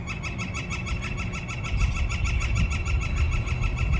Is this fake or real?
real